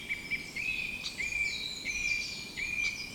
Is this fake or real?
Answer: real